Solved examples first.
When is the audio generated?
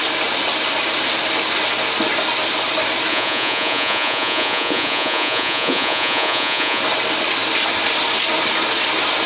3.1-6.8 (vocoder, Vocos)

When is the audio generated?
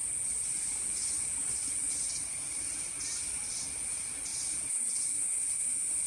0.0-3.6 (vocoder, BigVGAN v2); 4.3-5.1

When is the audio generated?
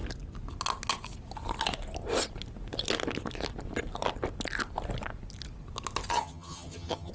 6.1-7.1 (vocoder, HiFi-GAN)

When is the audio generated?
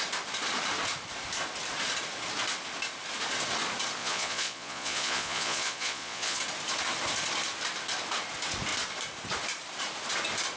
4.0-6.4 (vocoder, Vocos)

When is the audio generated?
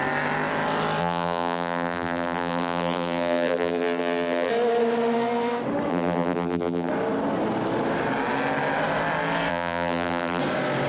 1.0-4.5 (vocoder, BigVGAN v2); 5.9-6.9; 9.5-10.4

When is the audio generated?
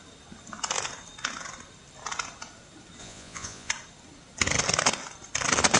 3.0-3.7 (vocoder, Vocos)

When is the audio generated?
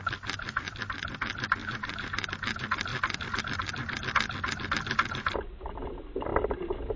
1.6-2.3 (vocoder, BigVGAN v2)